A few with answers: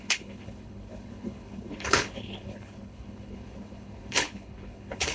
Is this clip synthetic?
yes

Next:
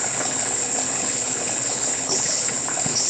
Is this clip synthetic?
yes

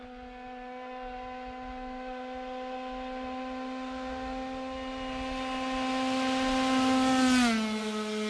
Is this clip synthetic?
no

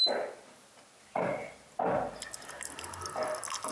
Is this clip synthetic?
no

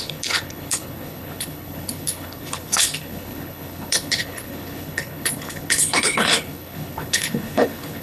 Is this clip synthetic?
yes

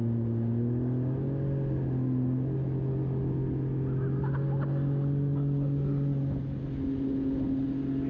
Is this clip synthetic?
no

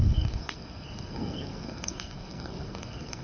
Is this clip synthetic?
yes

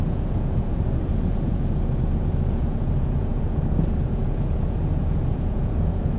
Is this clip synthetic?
yes